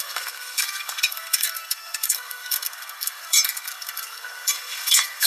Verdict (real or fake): fake